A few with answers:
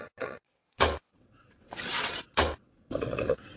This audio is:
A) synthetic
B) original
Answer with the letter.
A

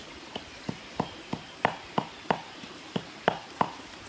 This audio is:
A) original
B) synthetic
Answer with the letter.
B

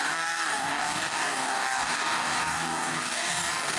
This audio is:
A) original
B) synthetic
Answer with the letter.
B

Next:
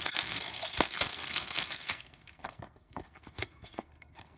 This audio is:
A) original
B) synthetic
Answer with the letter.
B